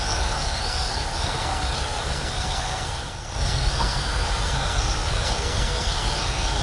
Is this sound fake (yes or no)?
yes